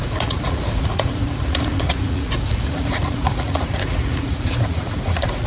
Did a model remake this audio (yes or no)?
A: yes